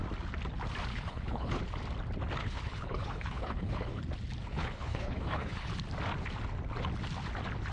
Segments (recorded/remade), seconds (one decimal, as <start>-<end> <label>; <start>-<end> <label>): 0.0-0.9 recorded; 0.9-1.6 remade; 1.6-2.4 recorded; 2.4-4.0 remade; 4.0-4.4 recorded; 4.4-5.7 remade; 5.7-7.7 recorded